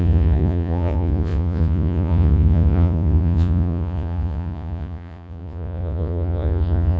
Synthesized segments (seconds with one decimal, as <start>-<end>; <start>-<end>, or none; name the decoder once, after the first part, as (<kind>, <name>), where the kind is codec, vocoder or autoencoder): 0.0-7.0 (vocoder, Vocos)

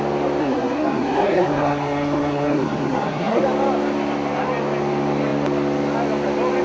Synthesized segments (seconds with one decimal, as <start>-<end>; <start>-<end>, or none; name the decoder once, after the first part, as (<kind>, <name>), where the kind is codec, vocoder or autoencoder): 0.4-3.4 (codec, SNAC)

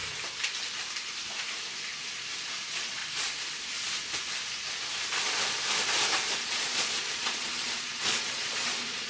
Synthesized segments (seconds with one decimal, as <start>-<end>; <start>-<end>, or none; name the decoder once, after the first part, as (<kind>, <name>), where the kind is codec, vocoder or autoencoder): 2.5-3.0 (vocoder, Vocos); 6.3-9.1

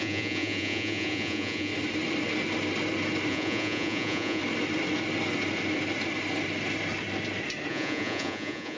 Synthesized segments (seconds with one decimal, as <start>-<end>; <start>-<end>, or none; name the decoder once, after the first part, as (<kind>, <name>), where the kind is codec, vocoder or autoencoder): 0.0-1.7 (vocoder, Vocos); 3.3-4.4; 7.7-8.8